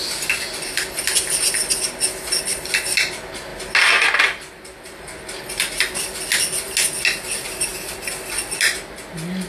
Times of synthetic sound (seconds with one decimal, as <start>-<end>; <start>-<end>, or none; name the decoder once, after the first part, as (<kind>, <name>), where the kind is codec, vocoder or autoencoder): none